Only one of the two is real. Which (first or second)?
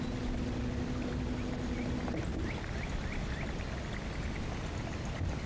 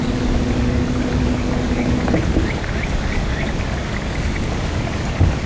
first